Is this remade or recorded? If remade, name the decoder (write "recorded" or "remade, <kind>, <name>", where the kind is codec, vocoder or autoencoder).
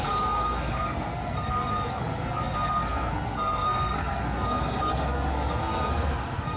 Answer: remade, codec, SNAC